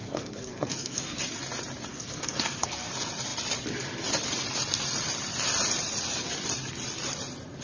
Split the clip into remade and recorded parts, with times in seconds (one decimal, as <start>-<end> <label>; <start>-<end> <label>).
0.0-1.2 remade; 1.2-1.9 recorded; 1.9-2.9 remade; 2.9-7.6 recorded